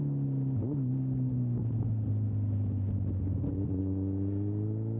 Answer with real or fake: real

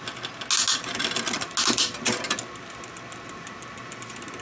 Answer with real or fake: real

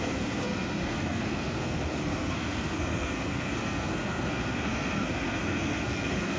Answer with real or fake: fake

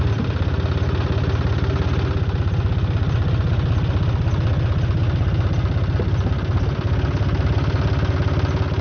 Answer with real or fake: real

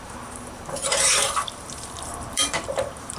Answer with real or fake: fake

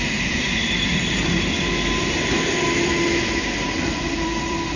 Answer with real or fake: fake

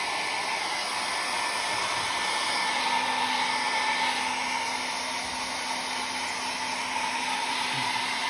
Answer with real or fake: real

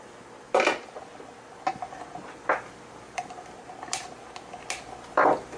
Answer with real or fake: real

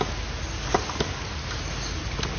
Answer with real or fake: real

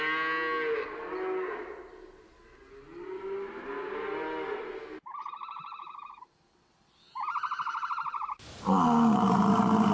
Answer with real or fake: real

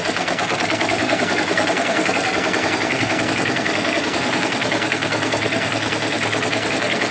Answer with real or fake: fake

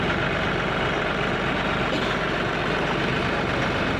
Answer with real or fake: real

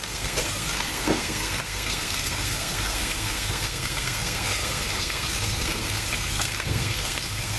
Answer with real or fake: fake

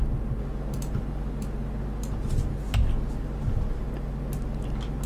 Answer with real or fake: real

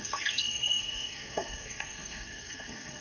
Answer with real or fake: fake